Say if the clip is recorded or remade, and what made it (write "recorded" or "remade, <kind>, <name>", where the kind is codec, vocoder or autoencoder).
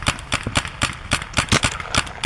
recorded